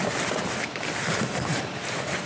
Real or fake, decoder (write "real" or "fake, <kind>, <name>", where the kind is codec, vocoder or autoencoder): fake, vocoder, BigVGAN v2